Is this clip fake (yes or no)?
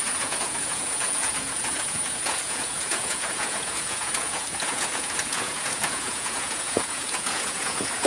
yes